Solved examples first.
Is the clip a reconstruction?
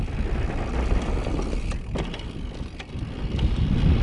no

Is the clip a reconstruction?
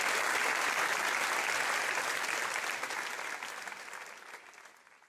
no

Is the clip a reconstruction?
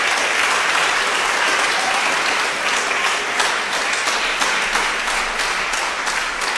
no